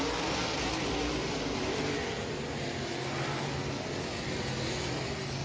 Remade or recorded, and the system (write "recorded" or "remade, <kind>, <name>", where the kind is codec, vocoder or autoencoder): recorded